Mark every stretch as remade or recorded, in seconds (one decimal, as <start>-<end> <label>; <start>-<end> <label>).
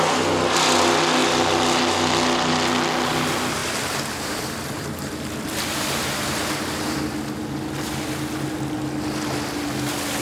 0.0-3.6 recorded; 3.6-7.0 remade; 7.0-10.2 recorded